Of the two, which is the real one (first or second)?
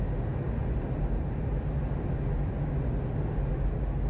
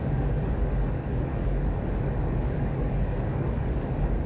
first